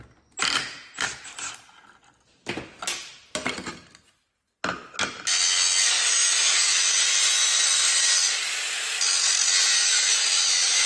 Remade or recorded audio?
recorded